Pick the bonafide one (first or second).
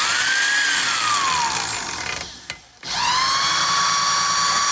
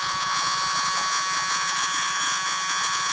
first